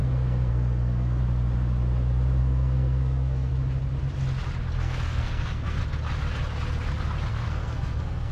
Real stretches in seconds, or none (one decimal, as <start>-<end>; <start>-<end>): 1.2-2.4; 3.5-4.8; 5.8-7.3